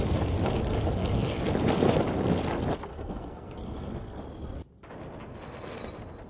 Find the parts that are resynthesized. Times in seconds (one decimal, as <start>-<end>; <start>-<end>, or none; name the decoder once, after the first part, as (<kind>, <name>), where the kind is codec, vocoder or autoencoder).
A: 1.0-1.5 (codec, SNAC); 2.9-4.2

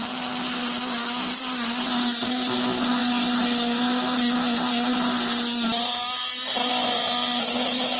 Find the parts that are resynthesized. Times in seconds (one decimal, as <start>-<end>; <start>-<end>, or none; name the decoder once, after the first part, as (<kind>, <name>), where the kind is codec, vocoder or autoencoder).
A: none

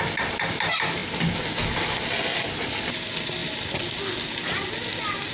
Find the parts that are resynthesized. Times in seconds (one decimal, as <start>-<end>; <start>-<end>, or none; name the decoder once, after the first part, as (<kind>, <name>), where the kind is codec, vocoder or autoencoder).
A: none

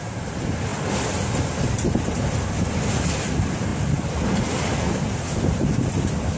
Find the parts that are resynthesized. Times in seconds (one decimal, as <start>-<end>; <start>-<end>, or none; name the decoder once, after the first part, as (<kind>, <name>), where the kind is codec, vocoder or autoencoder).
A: none

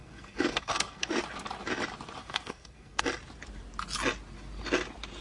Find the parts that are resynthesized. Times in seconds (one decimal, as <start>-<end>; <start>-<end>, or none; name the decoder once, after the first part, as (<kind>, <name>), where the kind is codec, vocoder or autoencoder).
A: 0.0-1.1 (codec, SNAC); 2.2-3.0

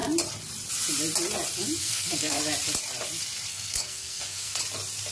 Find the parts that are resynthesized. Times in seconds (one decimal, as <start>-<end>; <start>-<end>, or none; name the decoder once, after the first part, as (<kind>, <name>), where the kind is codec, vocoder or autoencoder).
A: 1.8-2.4 (codec, SNAC); 3.5-4.6